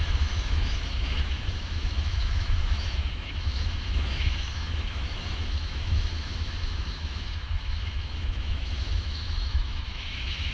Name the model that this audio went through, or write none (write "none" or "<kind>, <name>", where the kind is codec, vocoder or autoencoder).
autoencoder, DAC-VAE